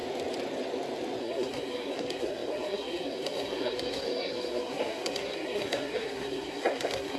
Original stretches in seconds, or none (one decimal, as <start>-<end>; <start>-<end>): 0.0-1.2